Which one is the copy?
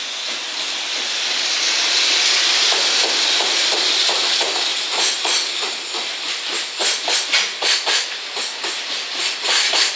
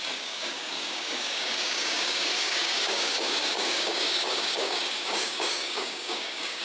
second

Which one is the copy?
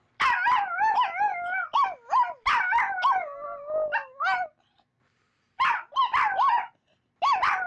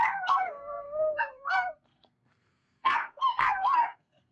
second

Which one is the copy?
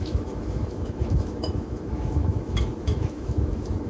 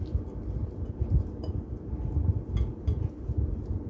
first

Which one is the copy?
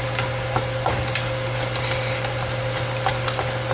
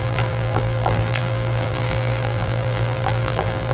second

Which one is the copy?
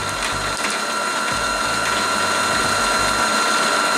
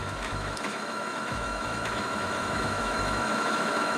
second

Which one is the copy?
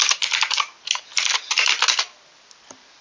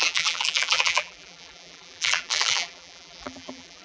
second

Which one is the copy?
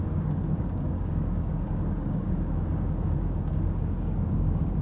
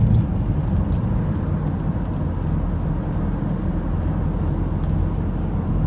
first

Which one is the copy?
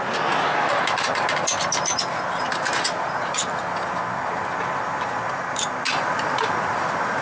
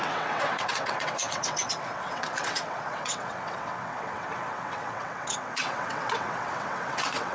second